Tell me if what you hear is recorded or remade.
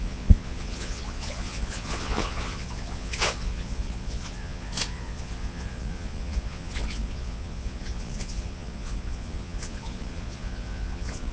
remade